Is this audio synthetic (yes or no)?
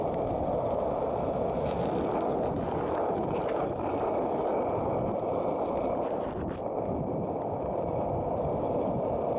yes